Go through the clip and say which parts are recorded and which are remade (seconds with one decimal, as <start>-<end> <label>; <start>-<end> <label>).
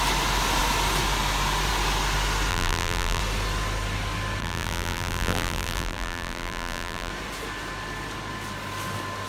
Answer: 0.0-2.5 recorded; 2.5-3.2 remade; 3.2-4.4 recorded; 4.4-7.1 remade; 7.1-9.3 recorded